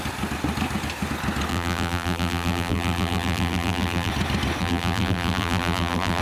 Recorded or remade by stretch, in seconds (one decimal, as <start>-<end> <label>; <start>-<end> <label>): 0.0-1.5 recorded; 1.5-4.1 remade; 4.1-4.6 recorded; 4.6-6.2 remade